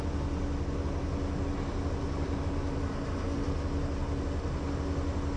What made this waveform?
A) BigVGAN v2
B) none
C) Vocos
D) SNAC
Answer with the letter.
B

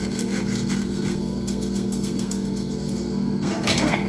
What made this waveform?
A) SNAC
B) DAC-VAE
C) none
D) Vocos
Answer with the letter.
A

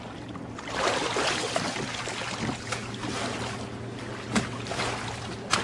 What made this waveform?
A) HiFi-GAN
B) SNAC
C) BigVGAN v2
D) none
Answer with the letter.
D